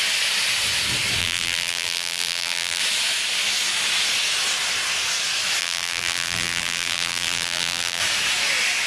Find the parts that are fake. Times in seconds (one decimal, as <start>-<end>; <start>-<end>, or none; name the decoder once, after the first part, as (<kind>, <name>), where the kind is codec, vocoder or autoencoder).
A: 1.2-2.8 (vocoder, BigVGAN v2); 5.6-8.0